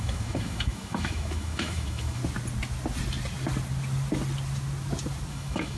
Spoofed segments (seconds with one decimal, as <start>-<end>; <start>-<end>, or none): 0.0-2.2; 5.3-5.8